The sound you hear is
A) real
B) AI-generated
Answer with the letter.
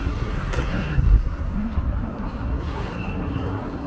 B